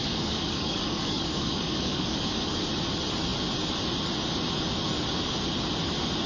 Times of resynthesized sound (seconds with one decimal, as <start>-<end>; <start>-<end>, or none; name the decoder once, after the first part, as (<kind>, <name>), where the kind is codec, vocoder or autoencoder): 0.0-2.6 (codec, DAC)